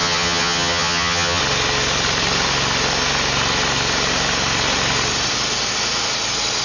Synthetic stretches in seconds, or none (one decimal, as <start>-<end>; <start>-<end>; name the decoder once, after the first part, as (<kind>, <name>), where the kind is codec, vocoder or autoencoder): 0.0-1.4 (vocoder, HiFi-GAN)